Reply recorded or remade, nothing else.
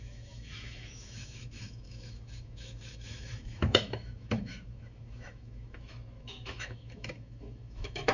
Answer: remade